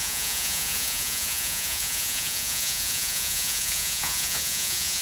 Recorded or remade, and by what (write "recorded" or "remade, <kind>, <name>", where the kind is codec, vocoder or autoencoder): remade, vocoder, Vocos